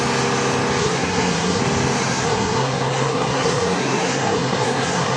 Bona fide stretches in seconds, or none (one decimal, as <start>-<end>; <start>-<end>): 0.0-0.8; 1.6-2.0